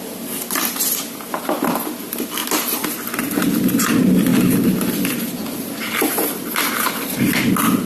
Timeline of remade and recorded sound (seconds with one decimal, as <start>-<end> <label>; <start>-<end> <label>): 0.0-7.9 recorded